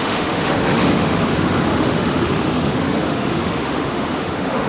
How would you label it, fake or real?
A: fake